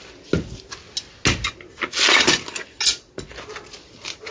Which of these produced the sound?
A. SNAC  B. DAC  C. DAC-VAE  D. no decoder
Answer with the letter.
D